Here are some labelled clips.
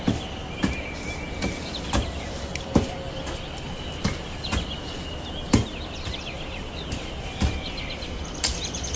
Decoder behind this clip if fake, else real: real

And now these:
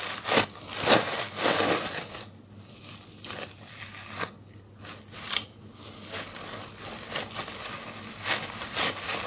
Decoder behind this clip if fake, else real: real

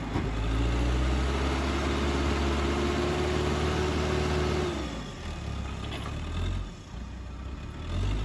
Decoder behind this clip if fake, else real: real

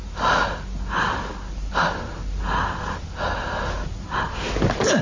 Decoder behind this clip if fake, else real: real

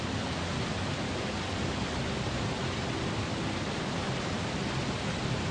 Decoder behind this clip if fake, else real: real